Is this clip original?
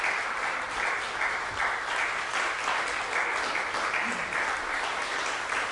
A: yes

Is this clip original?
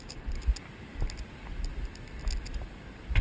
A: yes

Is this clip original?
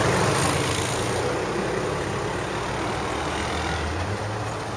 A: yes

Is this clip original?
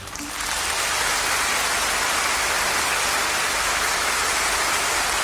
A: yes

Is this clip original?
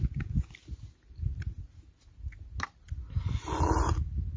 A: yes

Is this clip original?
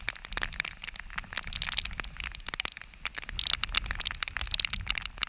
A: yes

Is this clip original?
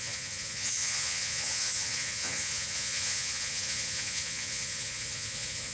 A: no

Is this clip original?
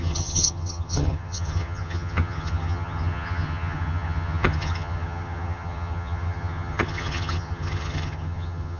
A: no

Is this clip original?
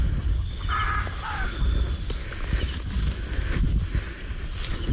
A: yes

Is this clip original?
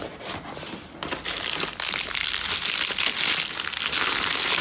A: yes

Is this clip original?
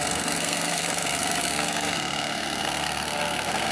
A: no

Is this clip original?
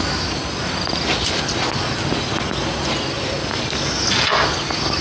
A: yes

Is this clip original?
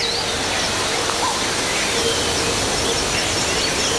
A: yes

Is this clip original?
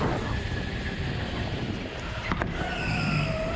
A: yes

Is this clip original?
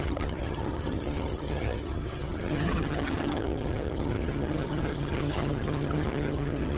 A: no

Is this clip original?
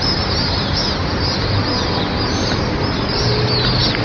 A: yes